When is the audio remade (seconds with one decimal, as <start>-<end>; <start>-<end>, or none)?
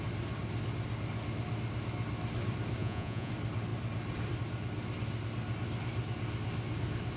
2.8-3.3